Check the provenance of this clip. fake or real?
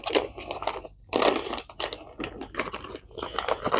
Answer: real